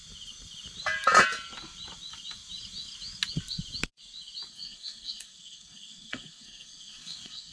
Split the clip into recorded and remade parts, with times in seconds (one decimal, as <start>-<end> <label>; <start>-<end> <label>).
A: 0.0-4.5 recorded; 4.5-7.5 remade